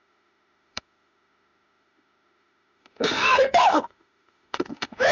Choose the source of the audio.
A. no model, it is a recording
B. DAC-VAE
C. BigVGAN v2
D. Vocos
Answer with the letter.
B